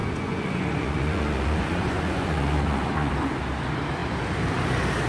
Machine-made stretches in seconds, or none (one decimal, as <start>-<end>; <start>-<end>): 0.0-3.1